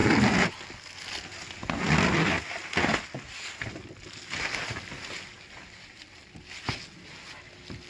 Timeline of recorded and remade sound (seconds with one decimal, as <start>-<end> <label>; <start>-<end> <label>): 0.0-7.9 recorded